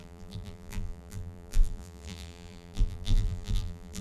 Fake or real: fake